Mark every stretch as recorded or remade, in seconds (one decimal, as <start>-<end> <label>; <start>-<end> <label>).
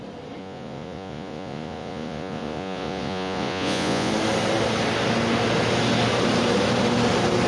0.0-0.4 recorded; 0.4-4.1 remade; 4.1-7.5 recorded